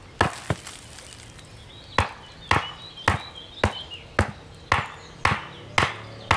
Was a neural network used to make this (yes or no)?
no